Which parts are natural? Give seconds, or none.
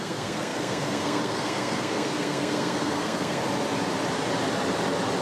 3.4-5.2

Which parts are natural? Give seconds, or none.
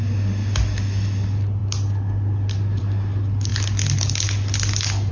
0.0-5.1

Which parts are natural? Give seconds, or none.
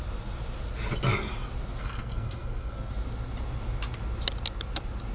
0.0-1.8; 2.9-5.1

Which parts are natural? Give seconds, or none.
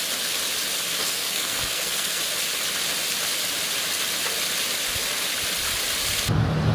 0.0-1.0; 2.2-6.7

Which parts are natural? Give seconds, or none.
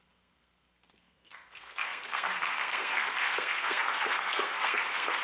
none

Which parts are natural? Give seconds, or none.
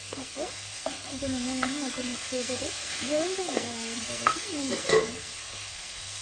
none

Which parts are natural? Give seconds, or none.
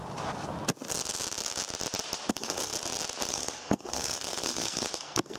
0.0-2.3; 2.7-3.3